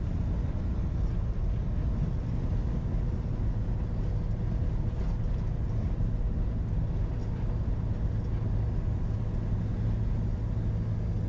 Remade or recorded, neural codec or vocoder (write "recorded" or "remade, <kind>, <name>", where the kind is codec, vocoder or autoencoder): recorded